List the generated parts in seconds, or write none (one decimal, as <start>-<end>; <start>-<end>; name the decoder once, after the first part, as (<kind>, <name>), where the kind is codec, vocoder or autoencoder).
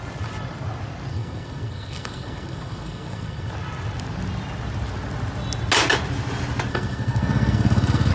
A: 1.1-3.5 (codec, SNAC); 6.7-8.1